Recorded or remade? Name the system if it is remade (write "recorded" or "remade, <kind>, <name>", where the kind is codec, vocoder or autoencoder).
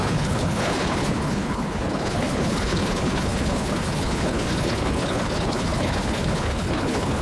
remade, codec, HILCodec